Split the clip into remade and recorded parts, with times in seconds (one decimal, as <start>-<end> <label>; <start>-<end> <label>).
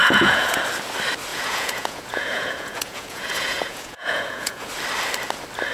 0.0-0.6 remade; 0.6-1.3 recorded; 1.3-4.7 remade; 4.7-5.7 recorded